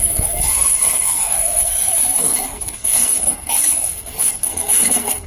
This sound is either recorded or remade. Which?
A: remade